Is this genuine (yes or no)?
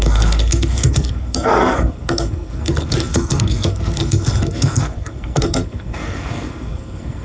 no